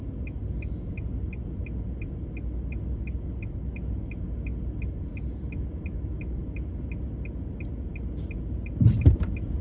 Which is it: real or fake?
real